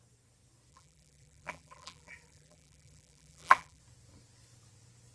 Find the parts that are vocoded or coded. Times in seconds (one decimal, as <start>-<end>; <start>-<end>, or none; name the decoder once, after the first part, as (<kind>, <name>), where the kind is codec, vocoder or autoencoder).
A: 0.7-3.8 (vocoder, BigVGAN v2)